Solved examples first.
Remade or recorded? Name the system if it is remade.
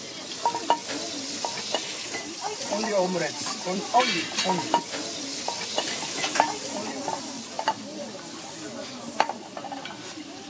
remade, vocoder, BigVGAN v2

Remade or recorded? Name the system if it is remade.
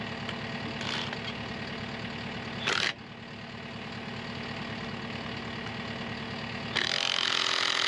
recorded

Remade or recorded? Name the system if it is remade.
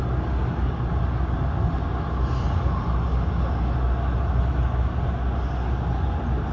recorded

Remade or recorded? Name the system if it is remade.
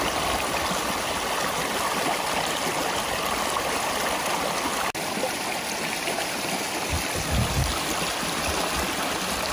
recorded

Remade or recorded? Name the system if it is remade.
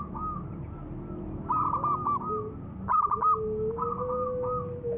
recorded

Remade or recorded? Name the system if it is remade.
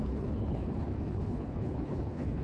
remade, codec, HILCodec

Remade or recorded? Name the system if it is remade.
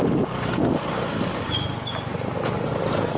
recorded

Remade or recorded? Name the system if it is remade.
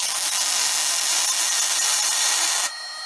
recorded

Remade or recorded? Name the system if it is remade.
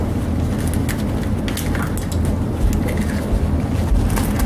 recorded